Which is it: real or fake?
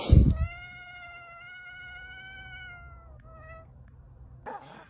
real